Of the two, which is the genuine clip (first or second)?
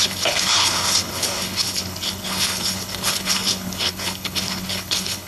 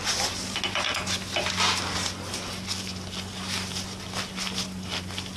second